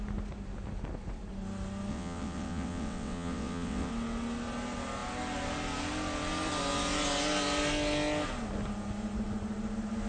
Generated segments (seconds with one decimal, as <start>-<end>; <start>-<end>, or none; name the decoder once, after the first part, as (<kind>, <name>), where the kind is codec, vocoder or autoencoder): 1.9-3.9 (vocoder, WaveNeXt)

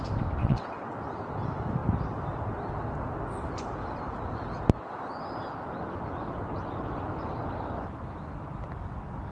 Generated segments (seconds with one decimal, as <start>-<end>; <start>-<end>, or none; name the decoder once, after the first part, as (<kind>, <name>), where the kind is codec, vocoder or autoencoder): 0.4-1.0 (vocoder, WaveNeXt)

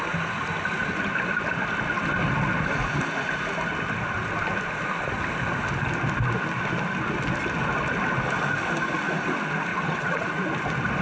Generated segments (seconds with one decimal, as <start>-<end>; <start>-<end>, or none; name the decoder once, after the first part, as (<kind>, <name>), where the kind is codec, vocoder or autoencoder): 9.7-10.3 (vocoder, WaveNeXt)

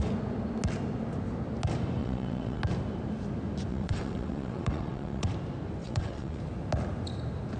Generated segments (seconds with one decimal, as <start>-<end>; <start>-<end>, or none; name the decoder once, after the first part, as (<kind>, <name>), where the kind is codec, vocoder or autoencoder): 2.0-2.6 (vocoder, WaveNeXt); 3.7-5.3; 5.8-6.4